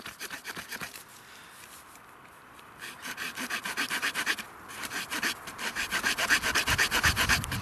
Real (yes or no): no